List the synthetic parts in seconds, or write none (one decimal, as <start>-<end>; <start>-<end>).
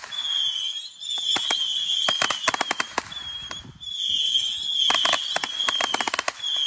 none